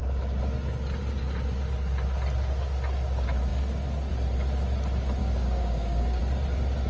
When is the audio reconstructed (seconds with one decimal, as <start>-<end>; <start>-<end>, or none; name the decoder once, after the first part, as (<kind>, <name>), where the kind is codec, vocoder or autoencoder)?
5.2-6.2 (codec, DAC)